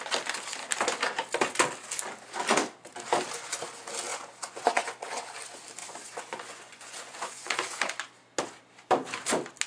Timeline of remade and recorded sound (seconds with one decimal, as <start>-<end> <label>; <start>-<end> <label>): 0.0-4.1 recorded; 4.1-5.2 remade; 5.2-5.8 recorded; 5.8-7.8 remade; 7.8-9.7 recorded